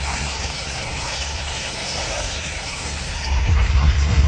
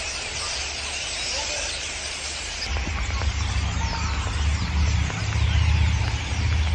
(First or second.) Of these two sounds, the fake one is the first